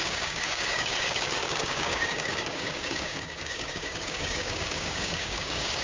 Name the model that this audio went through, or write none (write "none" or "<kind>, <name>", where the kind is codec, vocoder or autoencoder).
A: codec, DAC